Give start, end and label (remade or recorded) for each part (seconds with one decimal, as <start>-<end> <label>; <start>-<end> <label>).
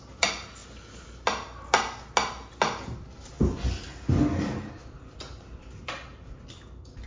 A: 0.0-7.1 recorded